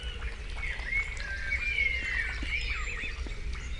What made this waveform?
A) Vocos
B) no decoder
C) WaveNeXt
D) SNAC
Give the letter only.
B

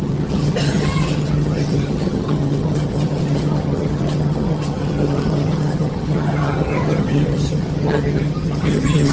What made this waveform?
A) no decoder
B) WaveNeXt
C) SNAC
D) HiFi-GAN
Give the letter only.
D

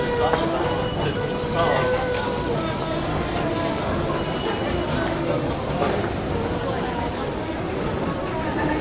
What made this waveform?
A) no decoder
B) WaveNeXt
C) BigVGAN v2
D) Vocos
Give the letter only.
A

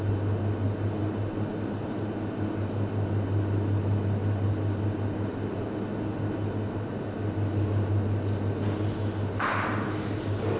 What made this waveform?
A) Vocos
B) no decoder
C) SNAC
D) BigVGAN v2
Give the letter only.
B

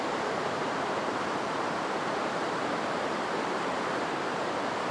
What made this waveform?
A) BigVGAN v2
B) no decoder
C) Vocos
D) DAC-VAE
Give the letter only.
A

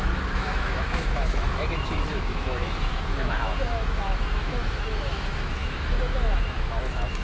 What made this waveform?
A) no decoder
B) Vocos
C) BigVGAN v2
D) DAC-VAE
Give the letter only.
D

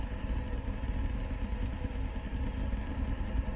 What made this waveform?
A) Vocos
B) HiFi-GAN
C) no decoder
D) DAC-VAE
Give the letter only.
C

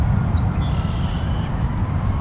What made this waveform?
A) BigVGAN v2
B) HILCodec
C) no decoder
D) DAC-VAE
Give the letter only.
A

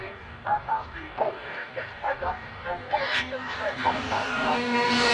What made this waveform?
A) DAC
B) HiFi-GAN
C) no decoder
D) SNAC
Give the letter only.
A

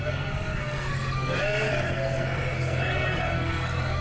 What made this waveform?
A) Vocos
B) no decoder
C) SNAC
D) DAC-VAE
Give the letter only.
C